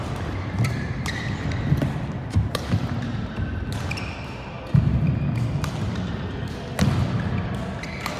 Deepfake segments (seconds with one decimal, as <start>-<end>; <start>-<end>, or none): 2.2-3.3